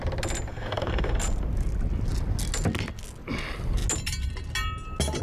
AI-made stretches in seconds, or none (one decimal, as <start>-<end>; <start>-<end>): 0.5-1.2